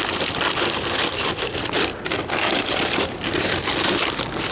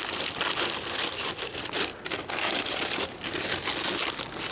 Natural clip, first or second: second